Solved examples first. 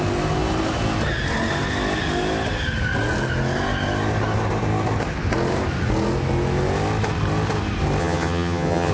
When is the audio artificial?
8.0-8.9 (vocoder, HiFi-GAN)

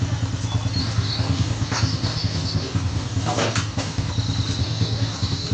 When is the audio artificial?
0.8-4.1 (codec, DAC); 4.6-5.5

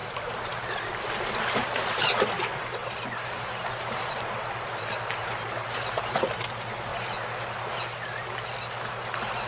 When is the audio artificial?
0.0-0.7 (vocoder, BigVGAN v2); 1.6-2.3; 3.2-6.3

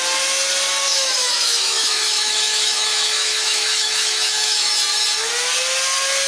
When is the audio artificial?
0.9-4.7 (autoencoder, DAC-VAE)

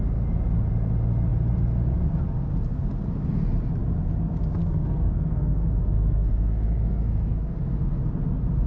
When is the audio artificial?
4.6-7.6 (codec, SNAC)